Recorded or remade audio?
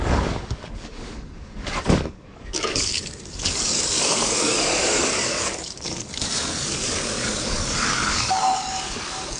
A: remade